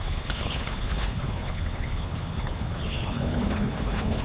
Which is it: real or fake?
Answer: fake